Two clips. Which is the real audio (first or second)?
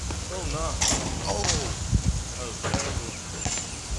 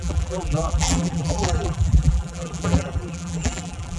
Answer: first